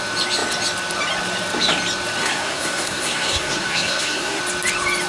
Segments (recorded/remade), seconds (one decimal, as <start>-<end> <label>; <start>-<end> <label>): 0.0-2.2 recorded; 2.2-4.4 remade; 4.4-5.1 recorded